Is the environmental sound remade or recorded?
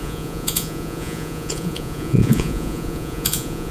remade